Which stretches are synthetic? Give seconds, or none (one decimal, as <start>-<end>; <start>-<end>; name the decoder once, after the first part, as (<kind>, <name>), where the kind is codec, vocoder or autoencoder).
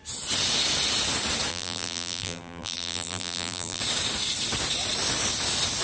1.5-3.8 (vocoder, BigVGAN v2)